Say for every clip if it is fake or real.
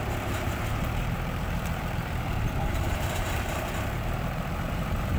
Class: fake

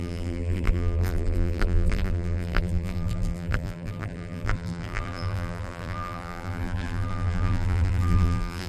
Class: fake